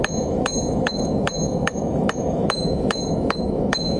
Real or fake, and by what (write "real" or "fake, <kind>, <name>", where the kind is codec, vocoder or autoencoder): fake, autoencoder, DAC-VAE